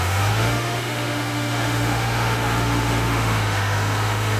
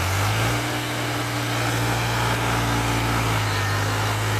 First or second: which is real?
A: second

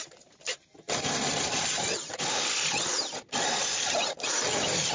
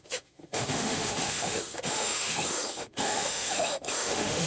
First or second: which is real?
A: first